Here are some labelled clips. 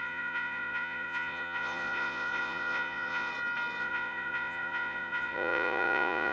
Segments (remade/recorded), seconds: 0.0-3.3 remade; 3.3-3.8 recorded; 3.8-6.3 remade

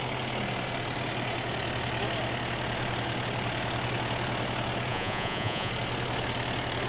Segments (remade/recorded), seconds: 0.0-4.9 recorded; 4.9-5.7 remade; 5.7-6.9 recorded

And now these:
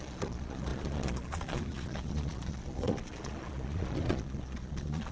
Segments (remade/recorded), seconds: 0.0-5.1 remade

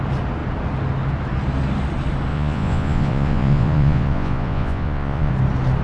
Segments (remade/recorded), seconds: 0.0-2.3 recorded; 2.3-5.3 remade; 5.3-5.8 recorded

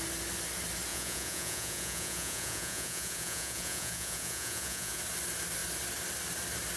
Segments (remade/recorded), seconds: 0.0-0.9 recorded; 0.9-5.0 remade; 5.0-6.8 recorded

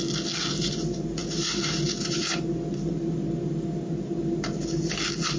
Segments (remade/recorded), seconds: 0.0-5.4 recorded

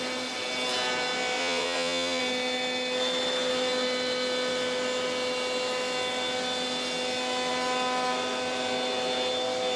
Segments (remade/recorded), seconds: 0.0-1.4 recorded; 1.4-2.2 remade; 2.2-9.8 recorded

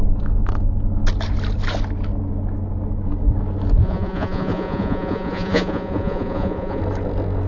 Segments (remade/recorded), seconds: 0.0-3.8 recorded; 3.8-6.8 remade; 6.8-7.5 recorded